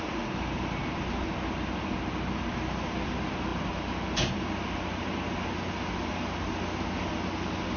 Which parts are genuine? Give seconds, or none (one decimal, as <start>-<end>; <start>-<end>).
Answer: 0.0-7.8